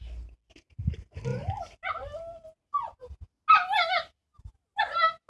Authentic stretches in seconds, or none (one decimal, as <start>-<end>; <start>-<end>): 0.0-5.3